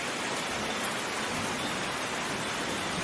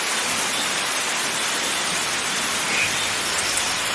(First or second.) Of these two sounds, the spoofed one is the second